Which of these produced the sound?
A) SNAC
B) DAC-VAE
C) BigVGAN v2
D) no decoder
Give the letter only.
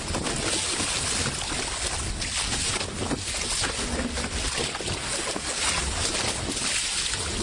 D